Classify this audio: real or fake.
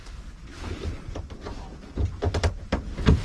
fake